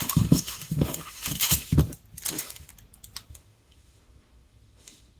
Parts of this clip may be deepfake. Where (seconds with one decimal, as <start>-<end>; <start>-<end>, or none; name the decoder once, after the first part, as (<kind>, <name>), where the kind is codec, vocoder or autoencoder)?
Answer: 0.0-1.8 (autoencoder, DAC-VAE); 2.3-2.7; 3.3-5.2